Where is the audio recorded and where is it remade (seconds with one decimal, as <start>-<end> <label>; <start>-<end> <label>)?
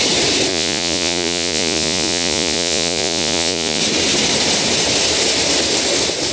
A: 0.0-0.5 recorded; 0.5-3.8 remade; 3.8-6.3 recorded